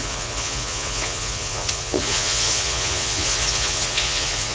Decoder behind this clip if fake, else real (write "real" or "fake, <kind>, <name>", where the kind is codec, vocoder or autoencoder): fake, vocoder, Vocos